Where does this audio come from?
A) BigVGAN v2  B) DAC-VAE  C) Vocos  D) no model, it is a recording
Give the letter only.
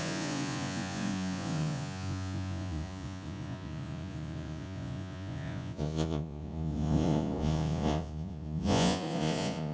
C